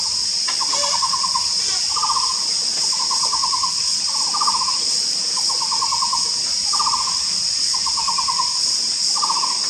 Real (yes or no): yes